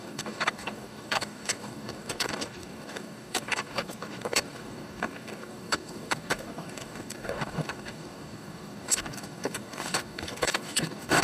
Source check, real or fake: fake